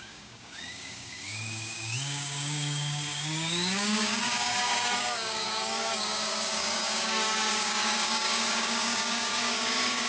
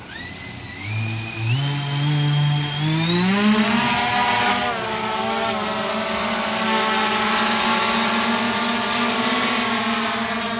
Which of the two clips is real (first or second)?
second